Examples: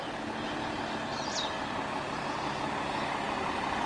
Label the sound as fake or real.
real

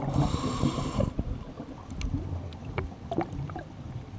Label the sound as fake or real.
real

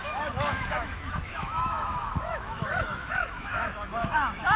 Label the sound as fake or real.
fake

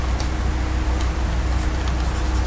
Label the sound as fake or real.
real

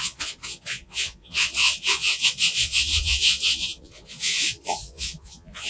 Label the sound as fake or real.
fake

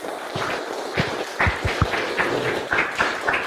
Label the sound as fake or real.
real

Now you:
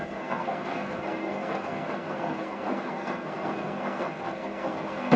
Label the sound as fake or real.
fake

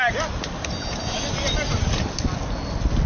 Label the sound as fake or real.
real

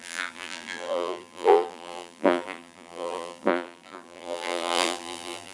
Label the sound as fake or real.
fake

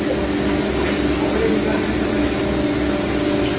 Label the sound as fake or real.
real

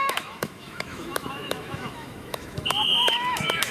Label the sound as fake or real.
fake